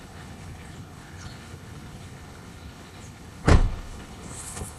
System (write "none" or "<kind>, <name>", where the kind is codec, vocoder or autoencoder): codec, HILCodec